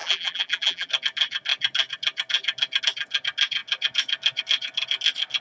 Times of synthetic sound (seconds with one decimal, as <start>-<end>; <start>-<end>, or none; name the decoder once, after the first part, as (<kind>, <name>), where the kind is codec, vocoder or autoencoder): 0.0-0.9 (vocoder, BigVGAN v2)